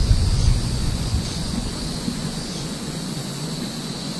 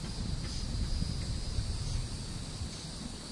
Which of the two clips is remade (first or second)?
first